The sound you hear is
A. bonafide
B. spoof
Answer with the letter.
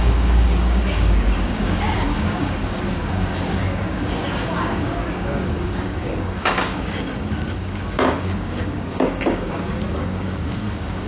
B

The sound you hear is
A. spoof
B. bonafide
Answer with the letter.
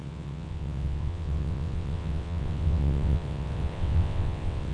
A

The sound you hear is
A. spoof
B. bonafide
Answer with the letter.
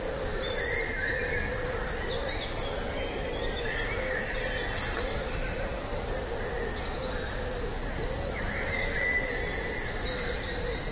B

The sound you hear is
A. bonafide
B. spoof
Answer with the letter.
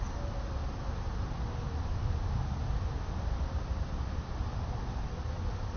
A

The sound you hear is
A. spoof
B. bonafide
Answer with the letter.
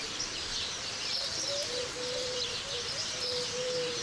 A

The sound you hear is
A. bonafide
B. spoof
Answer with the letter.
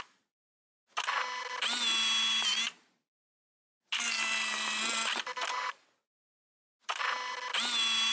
A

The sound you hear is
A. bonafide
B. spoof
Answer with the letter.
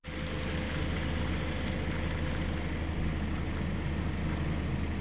A